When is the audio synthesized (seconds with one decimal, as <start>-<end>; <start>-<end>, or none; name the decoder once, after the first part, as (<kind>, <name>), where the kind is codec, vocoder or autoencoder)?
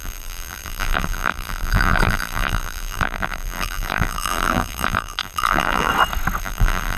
0.0-5.9 (vocoder, BigVGAN v2); 6.4-7.0